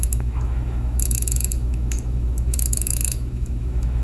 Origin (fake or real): fake